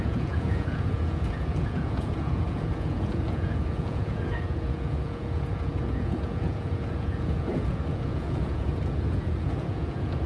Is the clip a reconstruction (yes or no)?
yes